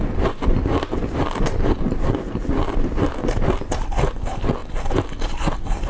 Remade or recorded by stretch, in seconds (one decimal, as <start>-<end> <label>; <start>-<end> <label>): 0.0-5.9 recorded